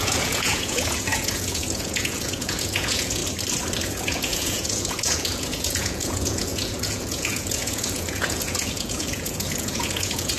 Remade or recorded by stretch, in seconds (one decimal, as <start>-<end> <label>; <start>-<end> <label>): 0.0-3.2 remade; 3.2-3.9 recorded; 3.9-10.4 remade

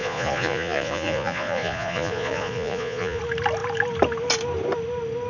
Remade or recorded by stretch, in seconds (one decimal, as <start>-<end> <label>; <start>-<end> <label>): 0.0-3.2 remade; 3.2-5.3 recorded